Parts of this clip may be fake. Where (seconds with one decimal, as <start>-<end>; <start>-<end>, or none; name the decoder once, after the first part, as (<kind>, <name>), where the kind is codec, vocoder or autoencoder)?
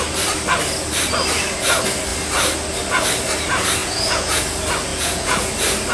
3.8-4.4 (vocoder, Vocos); 4.9-5.5